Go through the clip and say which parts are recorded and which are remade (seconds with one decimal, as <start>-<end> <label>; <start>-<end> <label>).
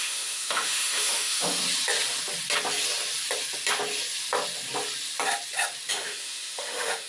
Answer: 0.0-1.6 remade; 1.6-5.9 recorded; 5.9-7.1 remade